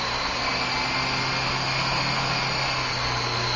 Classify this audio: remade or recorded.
recorded